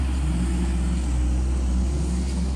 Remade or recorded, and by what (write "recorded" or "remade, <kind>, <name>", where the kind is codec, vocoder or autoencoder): recorded